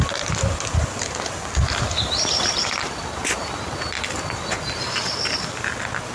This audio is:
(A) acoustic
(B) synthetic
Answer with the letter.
A